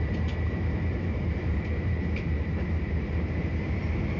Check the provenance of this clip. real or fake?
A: fake